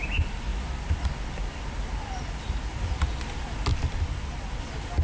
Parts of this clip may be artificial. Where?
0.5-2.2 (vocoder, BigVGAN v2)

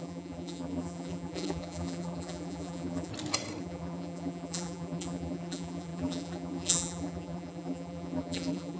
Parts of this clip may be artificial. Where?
0.0-3.1 (vocoder, BigVGAN v2); 3.6-8.8

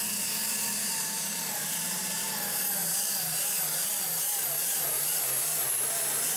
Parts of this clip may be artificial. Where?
0.8-2.0 (vocoder, BigVGAN v2); 2.8-5.4

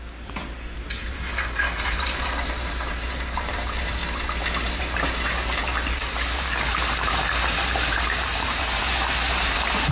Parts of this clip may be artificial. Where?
0.0-0.4 (vocoder, BigVGAN v2); 0.9-4.0; 4.8-9.9

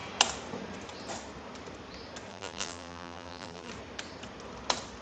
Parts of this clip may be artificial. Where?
2.3-3.7 (vocoder, BigVGAN v2)

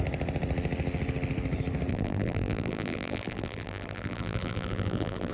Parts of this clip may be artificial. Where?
1.9-5.3 (vocoder, BigVGAN v2)